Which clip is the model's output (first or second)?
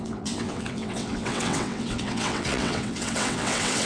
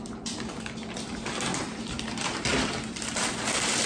first